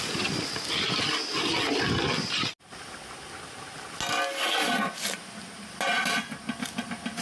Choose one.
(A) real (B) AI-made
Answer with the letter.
A